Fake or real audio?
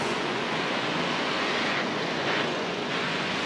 fake